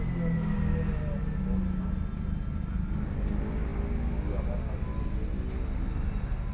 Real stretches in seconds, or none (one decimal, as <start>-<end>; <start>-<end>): 0.0-6.5